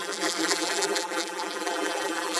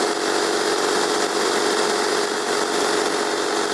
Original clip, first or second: second